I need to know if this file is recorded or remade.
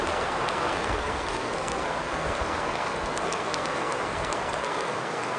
remade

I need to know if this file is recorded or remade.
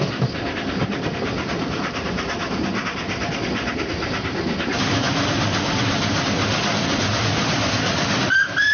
remade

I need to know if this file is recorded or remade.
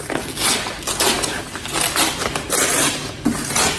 recorded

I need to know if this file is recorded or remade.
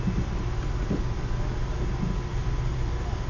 recorded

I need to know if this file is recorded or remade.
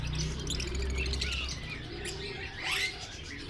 recorded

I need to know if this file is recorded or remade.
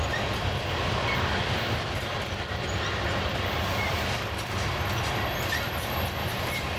recorded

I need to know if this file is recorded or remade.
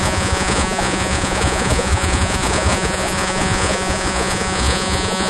remade